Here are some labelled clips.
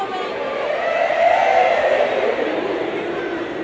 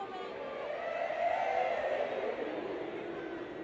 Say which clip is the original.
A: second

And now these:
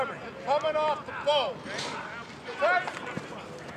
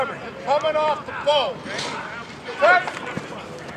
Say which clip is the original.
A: first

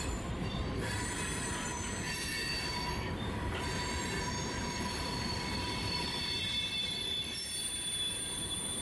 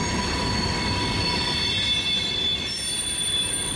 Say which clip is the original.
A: second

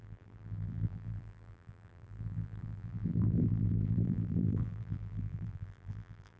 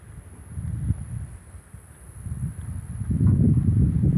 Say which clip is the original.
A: second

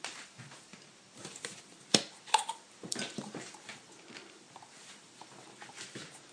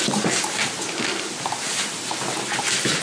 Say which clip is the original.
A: second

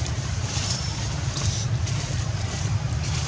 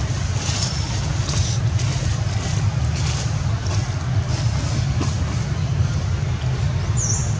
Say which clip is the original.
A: second